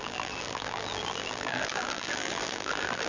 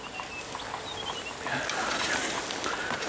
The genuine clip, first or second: second